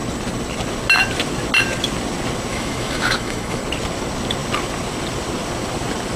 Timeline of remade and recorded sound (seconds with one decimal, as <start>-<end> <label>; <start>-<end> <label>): 0.0-2.5 recorded; 2.5-3.6 remade; 3.6-6.2 recorded